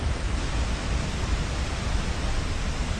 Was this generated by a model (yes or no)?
no